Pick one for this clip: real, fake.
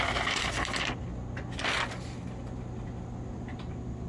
real